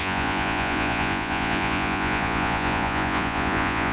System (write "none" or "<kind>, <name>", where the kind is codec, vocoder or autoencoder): vocoder, Vocos